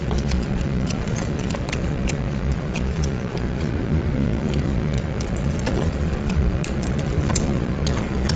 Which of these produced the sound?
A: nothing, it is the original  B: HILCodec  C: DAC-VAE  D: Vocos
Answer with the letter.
D